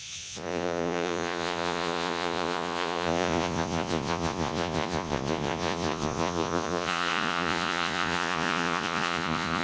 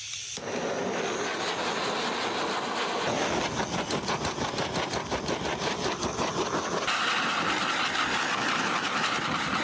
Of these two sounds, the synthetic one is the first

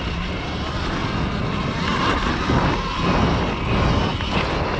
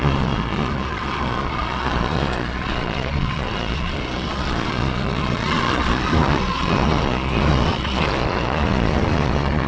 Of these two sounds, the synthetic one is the second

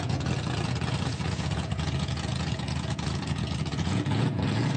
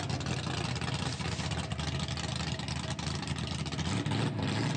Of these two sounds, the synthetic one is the first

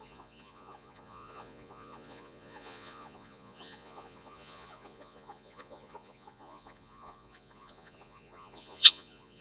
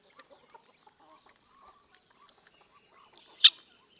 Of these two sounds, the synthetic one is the first